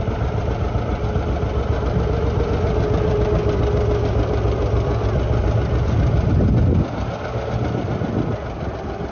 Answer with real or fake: real